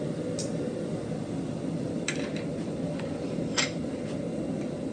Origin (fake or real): real